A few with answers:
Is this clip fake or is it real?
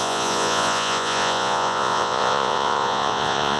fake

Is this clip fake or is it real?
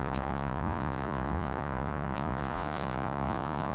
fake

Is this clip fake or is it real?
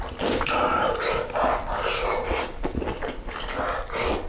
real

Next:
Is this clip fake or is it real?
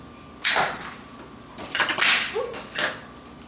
real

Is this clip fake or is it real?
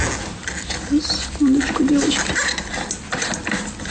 real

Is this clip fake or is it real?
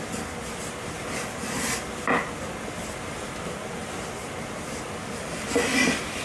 real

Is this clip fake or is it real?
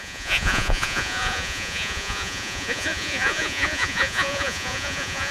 fake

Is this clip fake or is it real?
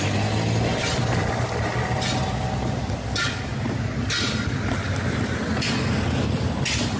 real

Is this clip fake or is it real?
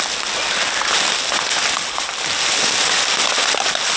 real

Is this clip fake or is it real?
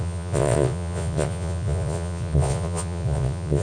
fake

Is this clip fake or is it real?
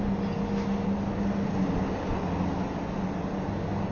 real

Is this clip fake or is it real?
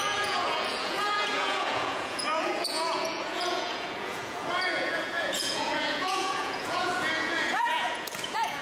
fake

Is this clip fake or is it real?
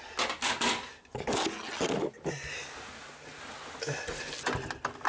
real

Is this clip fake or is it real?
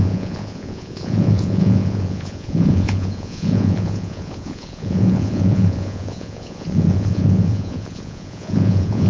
fake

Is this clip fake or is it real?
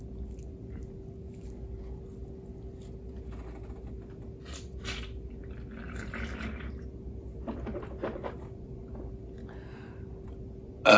real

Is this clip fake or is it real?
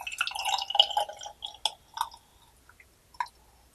real